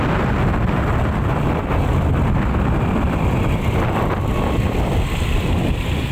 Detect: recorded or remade recorded